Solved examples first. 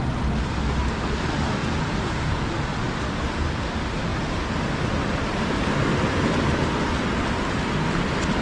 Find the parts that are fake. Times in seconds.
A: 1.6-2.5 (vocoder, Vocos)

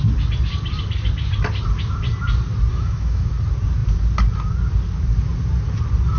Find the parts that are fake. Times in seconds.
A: 2.7-3.3 (autoencoder, DAC-VAE)

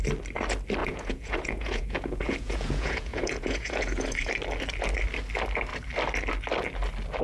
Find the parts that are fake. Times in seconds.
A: 0.8-4.3 (vocoder, Vocos)

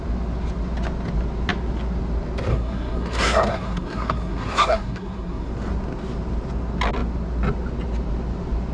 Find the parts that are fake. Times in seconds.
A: 2.5-5.5 (codec, SNAC)

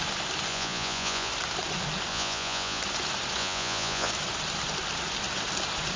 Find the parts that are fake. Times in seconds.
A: 0.5-1.3 (vocoder, Vocos); 2.1-2.8; 3.4-4.1

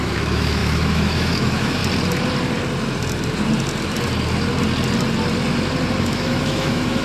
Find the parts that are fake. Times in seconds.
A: 0.0-1.8 (autoencoder, DAC-VAE); 6.0-7.0

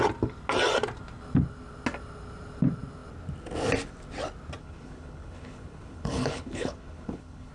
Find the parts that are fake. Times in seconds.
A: 4.6-7.5 (codec, HILCodec)